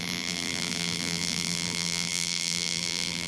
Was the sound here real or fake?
fake